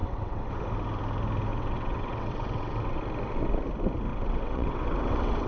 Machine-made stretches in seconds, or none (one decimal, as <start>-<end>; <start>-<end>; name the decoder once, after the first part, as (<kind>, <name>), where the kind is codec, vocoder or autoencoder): 0.0-0.5 (vocoder, WaveNeXt); 1.5-3.0; 4.1-5.5